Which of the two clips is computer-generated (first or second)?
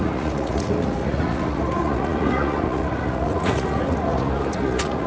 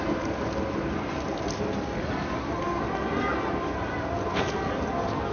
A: first